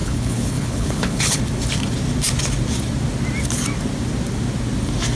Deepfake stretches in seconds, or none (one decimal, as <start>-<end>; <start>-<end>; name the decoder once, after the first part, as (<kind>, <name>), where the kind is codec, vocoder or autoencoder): 0.0-1.4 (codec, HILCodec)